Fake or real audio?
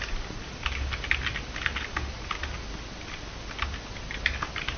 real